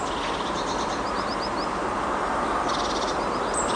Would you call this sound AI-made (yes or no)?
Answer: no